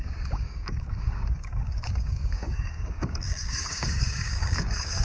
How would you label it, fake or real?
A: fake